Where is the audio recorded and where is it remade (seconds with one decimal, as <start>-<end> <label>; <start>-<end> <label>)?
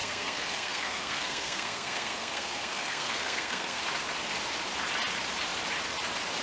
0.0-3.8 remade; 3.8-6.4 recorded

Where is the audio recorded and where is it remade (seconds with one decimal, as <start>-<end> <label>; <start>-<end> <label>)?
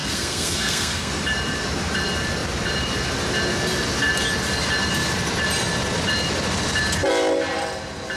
0.0-1.1 remade; 1.1-8.2 recorded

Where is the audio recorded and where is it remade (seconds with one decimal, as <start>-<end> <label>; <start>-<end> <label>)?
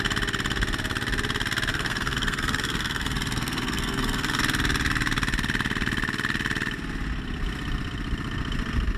0.0-1.7 recorded; 1.7-4.4 remade; 4.4-9.0 recorded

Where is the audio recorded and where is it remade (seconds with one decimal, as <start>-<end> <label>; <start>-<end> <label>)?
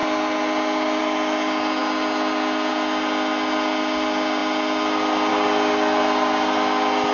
0.0-7.1 recorded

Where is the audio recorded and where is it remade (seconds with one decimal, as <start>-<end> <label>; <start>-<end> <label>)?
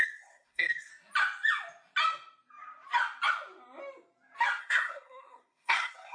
0.0-0.9 remade; 0.9-4.6 recorded; 4.6-6.1 remade